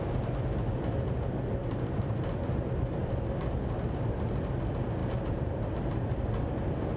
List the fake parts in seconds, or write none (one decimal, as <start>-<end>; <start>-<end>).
1.6-3.1; 5.0-6.0